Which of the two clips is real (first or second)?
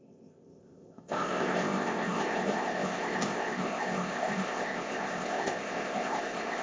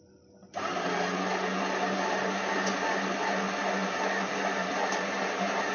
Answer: second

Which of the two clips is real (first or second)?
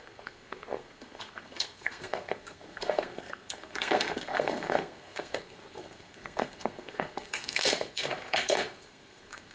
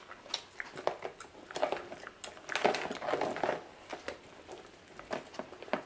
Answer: second